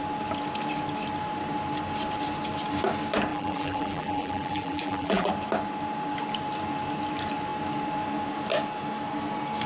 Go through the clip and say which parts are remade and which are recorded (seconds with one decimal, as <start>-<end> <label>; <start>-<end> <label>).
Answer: 0.0-3.3 recorded; 3.3-5.3 remade; 5.3-9.7 recorded